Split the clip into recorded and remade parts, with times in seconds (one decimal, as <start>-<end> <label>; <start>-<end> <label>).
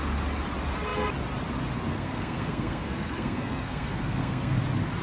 0.0-1.9 recorded; 1.9-4.6 remade; 4.6-5.0 recorded